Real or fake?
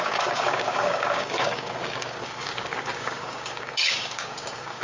fake